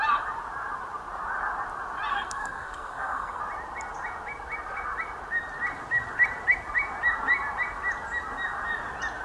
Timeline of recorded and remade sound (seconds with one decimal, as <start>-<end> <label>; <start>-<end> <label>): 0.0-2.1 recorded; 2.1-3.4 remade; 3.4-9.2 recorded